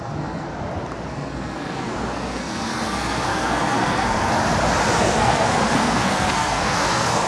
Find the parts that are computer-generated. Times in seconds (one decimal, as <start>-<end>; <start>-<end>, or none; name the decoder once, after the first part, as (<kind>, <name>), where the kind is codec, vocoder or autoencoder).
0.0-0.5 (codec, SNAC); 1.1-4.3; 5.0-7.3